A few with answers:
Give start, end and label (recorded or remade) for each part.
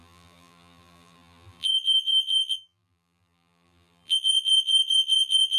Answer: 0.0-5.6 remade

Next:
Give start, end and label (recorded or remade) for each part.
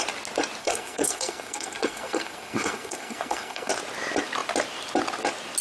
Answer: 0.0-0.6 recorded; 0.6-3.7 remade; 3.7-5.6 recorded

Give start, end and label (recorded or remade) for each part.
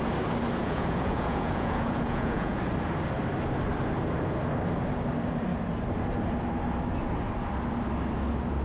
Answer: 0.0-0.6 recorded; 0.6-2.6 remade; 2.6-8.6 recorded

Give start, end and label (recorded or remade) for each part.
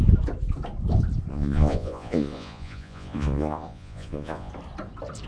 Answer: 0.0-1.3 recorded; 1.3-4.5 remade; 4.5-5.3 recorded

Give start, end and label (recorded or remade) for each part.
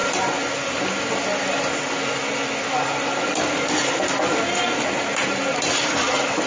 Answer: 0.0-6.5 recorded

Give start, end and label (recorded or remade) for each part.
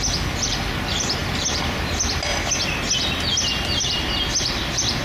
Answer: 0.0-2.3 remade; 2.3-3.8 recorded; 3.8-5.0 remade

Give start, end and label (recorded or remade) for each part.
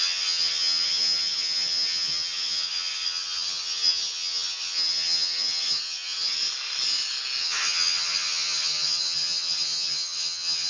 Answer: 0.0-6.4 remade; 6.4-7.4 recorded; 7.4-10.7 remade